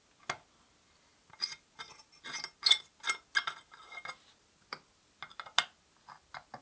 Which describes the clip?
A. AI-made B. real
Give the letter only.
B